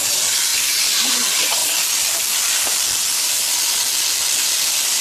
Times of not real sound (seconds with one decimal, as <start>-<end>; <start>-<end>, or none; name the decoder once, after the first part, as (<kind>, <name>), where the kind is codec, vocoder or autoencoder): 0.5-1.1 (vocoder, BigVGAN v2)